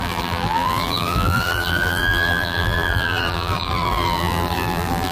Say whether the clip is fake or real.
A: fake